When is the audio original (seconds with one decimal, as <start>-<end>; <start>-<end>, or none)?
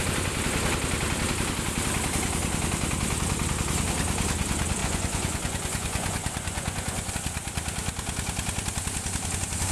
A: 0.0-4.8; 7.1-9.7